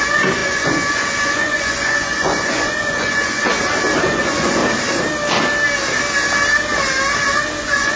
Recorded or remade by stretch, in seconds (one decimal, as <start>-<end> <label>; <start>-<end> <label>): 0.0-3.5 remade; 3.5-4.0 recorded; 4.0-4.6 remade; 4.6-7.6 recorded; 7.6-8.0 remade